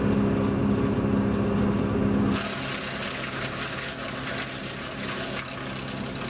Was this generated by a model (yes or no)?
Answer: no